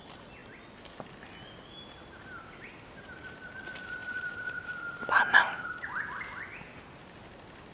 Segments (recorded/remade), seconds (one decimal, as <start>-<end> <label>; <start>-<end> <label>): 0.0-4.0 recorded; 4.0-5.9 remade; 5.9-7.7 recorded